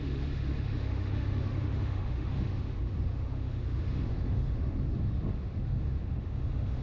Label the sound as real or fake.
fake